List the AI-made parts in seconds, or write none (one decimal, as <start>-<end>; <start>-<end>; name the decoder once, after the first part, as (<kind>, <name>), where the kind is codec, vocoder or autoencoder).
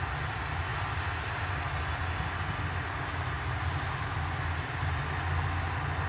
none